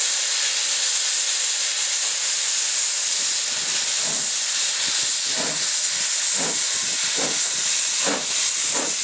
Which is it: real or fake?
real